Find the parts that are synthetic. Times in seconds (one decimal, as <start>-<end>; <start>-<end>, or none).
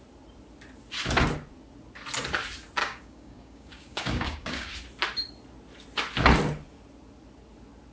2.8-4.7